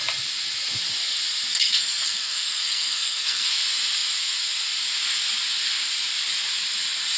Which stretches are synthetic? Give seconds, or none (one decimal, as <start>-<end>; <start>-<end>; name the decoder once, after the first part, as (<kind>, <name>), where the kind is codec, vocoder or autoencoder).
1.5-3.5 (codec, SNAC)